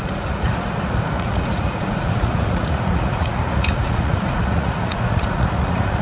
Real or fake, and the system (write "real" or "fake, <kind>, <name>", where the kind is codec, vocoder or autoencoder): fake, vocoder, Vocos